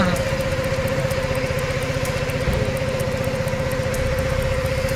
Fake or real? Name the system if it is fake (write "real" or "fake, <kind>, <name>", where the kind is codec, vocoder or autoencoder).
real